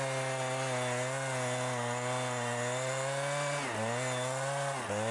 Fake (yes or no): no